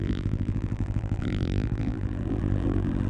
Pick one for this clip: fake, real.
fake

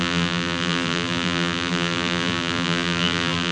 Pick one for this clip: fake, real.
fake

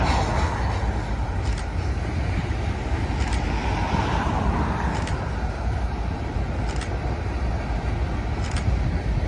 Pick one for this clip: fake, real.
real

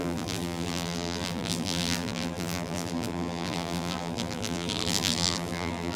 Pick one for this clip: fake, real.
fake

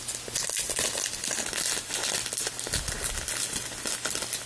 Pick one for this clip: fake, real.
real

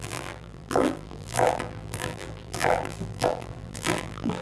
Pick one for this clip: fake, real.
fake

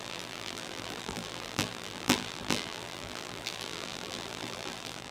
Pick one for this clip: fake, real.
fake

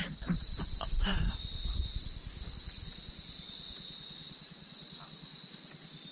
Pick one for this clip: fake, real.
fake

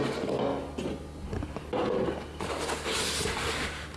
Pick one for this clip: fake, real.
real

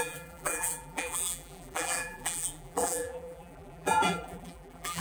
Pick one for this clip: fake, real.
fake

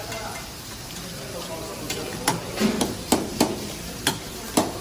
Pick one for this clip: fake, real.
fake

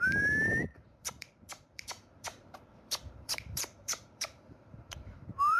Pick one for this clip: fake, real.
fake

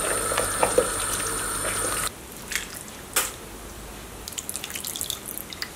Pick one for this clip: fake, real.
real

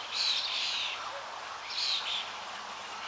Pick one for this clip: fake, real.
real